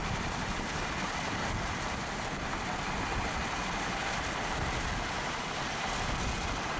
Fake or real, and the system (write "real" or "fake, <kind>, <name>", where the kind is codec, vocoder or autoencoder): real